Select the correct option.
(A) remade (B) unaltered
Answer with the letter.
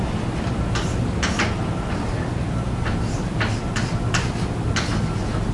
B